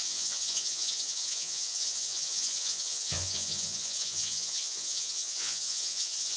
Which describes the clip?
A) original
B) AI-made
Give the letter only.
B